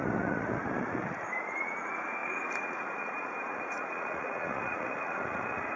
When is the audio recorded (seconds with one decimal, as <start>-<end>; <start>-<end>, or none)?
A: none

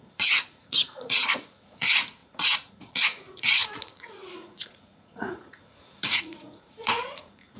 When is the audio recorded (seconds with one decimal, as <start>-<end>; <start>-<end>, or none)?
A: none

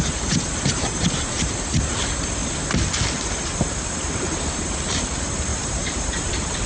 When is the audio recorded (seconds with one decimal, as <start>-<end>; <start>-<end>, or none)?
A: 0.0-5.5; 6.3-6.7